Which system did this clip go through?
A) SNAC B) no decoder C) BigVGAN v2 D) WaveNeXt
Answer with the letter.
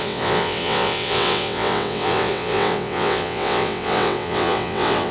D